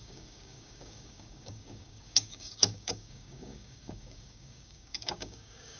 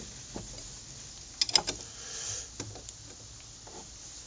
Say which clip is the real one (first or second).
second